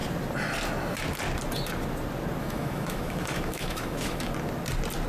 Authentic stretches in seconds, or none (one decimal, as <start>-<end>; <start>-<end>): 0.0-2.4; 4.3-5.1